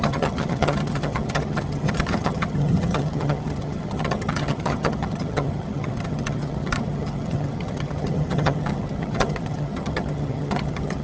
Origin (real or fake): fake